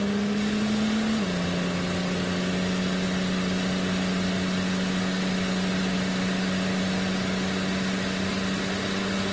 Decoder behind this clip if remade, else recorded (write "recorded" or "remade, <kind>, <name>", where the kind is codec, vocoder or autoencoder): recorded